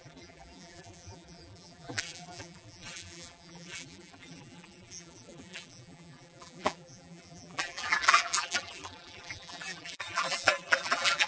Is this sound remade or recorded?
remade